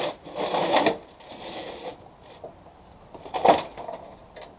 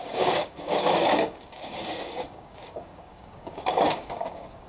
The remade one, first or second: second